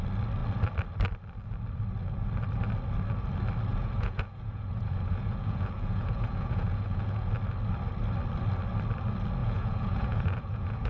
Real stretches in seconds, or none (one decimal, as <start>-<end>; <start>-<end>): 0.0-3.7; 7.3-9.4

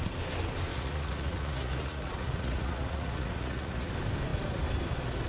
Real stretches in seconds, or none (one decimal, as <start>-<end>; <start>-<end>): 0.0-0.7; 3.9-5.3